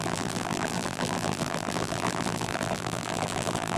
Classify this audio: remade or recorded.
remade